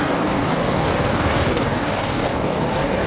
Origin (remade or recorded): remade